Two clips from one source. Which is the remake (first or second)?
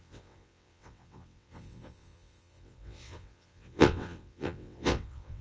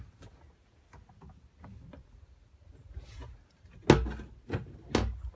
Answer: first